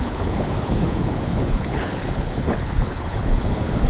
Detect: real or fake fake